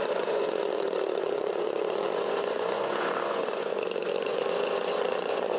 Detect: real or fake fake